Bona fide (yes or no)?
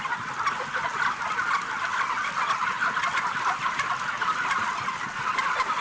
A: yes